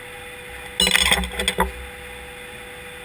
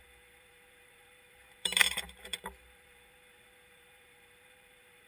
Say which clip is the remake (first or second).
second